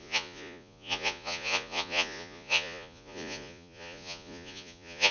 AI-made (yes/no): yes